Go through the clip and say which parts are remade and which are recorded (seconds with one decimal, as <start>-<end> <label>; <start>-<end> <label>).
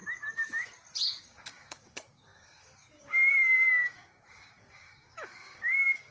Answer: 0.0-1.2 recorded; 1.2-6.1 remade